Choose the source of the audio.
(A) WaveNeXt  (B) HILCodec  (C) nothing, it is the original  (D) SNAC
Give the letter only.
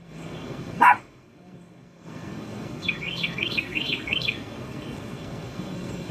D